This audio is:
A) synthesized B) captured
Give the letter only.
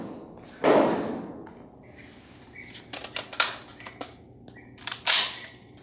B